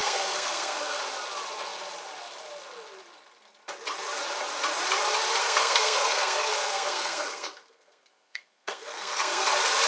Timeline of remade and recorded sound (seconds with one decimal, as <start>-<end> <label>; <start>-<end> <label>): 0.0-1.0 remade; 1.0-5.4 recorded; 5.4-9.5 remade; 9.5-9.9 recorded